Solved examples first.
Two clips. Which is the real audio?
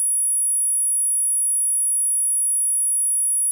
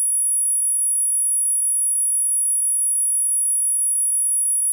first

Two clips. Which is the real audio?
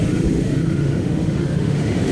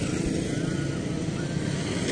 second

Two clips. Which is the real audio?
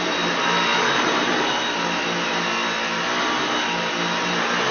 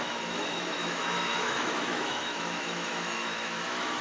first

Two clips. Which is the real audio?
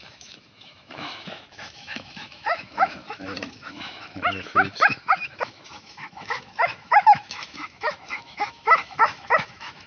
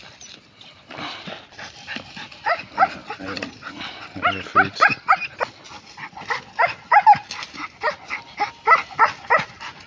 second